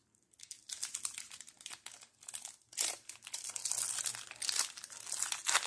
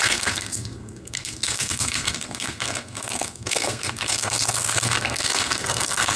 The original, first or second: first